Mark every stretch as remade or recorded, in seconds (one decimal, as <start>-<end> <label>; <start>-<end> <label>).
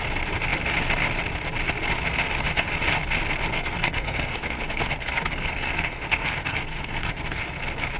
0.0-3.4 recorded; 3.4-7.4 remade; 7.4-8.0 recorded